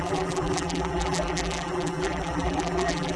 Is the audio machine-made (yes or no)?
yes